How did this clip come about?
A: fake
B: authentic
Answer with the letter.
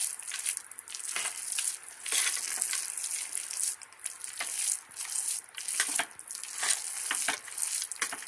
B